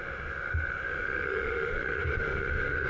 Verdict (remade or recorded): remade